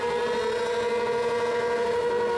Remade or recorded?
recorded